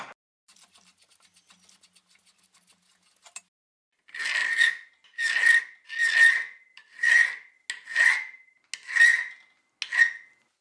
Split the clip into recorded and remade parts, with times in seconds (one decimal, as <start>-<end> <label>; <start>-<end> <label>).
0.0-10.6 recorded